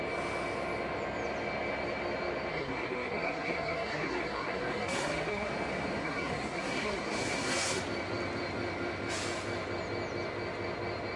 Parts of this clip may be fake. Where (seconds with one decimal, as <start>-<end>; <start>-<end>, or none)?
2.5-5.5; 6.0-7.8

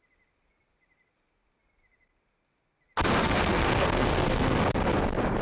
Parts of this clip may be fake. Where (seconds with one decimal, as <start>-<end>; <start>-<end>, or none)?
3.2-4.6

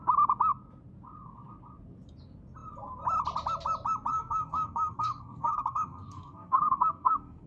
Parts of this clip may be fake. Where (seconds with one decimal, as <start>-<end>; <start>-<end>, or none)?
4.1-7.5

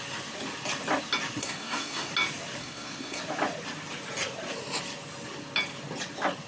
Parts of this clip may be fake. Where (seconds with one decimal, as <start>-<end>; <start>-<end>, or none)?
1.4-2.1; 2.6-3.2

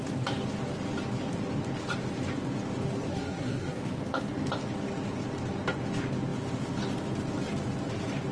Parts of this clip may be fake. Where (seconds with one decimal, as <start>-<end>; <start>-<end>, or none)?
3.1-3.8

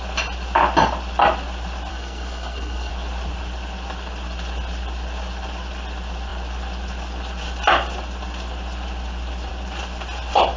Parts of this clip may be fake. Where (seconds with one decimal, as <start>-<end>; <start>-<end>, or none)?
1.9-2.9

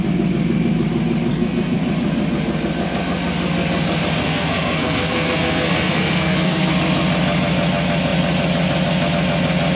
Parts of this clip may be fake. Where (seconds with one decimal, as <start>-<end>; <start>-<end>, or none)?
1.3-1.8; 4.2-6.7